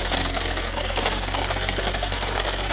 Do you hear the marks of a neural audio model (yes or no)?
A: yes